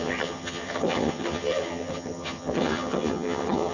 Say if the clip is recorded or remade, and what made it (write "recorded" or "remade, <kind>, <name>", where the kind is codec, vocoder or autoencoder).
remade, vocoder, HiFi-GAN